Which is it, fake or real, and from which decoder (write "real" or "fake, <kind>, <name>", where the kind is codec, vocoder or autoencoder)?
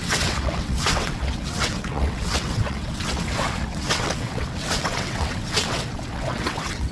fake, vocoder, WaveNeXt